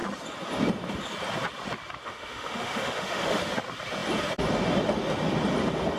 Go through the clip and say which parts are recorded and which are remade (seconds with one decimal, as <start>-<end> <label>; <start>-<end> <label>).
0.0-2.0 recorded; 2.0-3.5 remade; 3.5-6.0 recorded